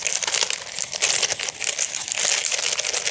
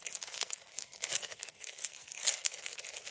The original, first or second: first